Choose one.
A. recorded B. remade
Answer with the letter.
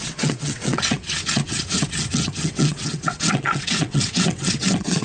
B